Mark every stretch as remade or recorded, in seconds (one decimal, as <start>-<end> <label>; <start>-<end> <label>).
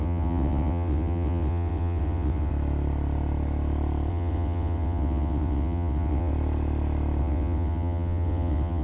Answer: 0.0-2.5 remade; 2.5-4.1 recorded; 4.1-6.3 remade; 6.3-7.2 recorded; 7.2-8.8 remade